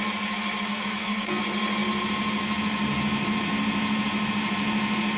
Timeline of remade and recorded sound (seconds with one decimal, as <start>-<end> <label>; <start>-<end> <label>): 0.0-0.7 recorded; 0.7-1.4 remade; 1.4-5.2 recorded